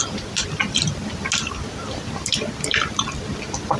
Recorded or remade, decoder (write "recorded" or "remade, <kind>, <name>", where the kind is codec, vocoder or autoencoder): recorded